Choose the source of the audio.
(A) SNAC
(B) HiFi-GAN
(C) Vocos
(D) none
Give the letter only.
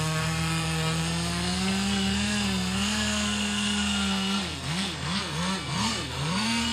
A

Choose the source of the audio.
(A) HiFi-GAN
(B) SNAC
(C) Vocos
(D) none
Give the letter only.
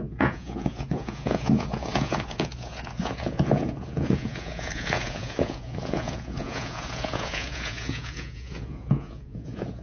C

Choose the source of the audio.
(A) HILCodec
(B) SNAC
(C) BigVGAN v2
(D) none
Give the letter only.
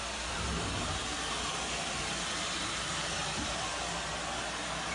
D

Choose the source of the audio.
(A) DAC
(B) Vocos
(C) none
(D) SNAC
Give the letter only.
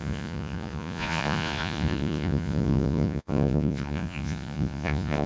B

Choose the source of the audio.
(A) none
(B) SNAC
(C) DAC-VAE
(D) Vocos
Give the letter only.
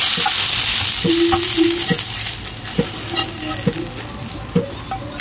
A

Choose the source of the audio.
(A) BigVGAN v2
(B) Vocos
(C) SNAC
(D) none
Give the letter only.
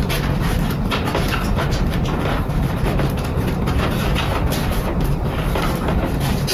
A